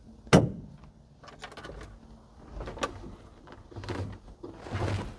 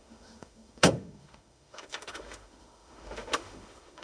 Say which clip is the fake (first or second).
second